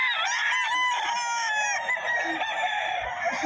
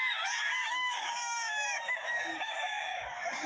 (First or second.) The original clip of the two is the first